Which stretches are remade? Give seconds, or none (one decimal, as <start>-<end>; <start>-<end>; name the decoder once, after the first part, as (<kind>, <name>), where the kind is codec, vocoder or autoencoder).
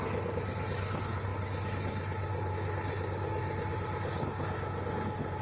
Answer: none